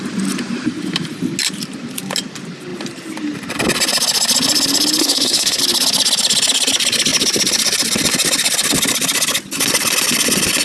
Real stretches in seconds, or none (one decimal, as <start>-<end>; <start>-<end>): 0.0-5.0; 5.6-10.6